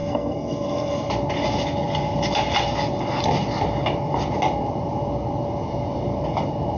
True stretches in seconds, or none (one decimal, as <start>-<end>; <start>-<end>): 1.1-6.8